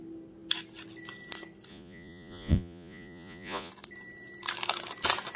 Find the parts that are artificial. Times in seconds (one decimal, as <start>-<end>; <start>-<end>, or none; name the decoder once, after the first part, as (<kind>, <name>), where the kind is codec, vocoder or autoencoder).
1.7-3.7 (vocoder, Vocos)